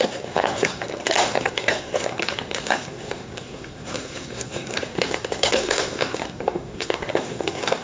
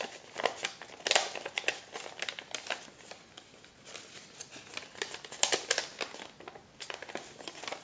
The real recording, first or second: second